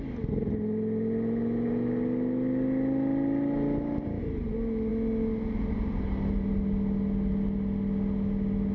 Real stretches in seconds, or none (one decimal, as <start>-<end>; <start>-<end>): 0.0-8.7